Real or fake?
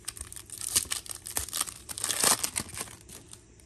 real